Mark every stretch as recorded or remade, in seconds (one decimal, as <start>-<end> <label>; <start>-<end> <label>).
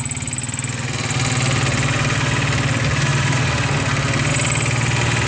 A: 0.0-5.3 recorded